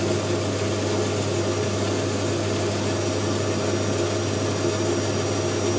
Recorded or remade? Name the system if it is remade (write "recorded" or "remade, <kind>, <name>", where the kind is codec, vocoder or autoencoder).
recorded